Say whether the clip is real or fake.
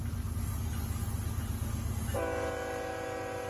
real